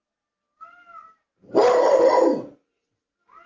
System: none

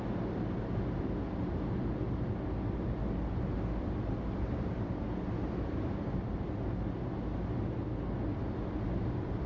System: none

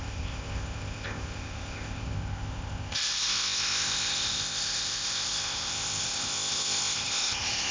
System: codec, ZipCodec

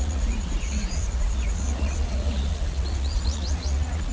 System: vocoder, Vocos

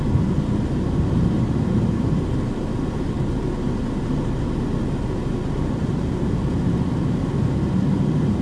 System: none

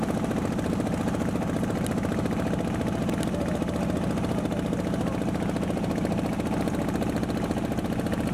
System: none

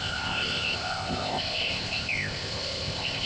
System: codec, ZipCodec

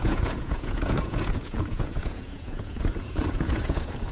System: vocoder, Vocos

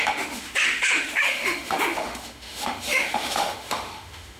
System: autoencoder, DAC-VAE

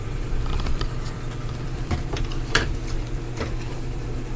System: vocoder, BigVGAN v2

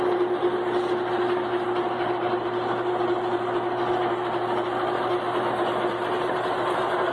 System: none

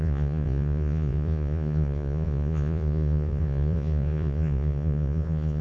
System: vocoder, Vocos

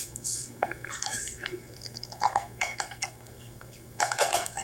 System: codec, SNAC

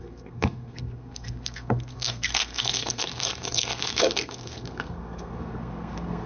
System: codec, SNAC